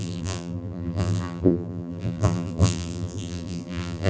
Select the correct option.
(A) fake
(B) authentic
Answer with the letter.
A